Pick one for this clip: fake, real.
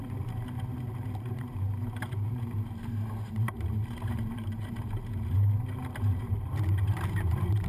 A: fake